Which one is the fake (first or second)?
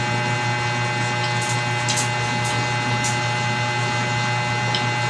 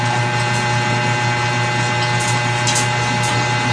second